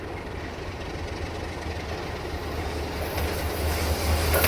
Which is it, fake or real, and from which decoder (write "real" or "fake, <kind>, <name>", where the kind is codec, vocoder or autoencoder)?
real